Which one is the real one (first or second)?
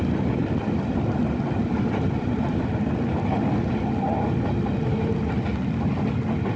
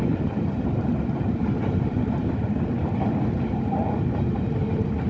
first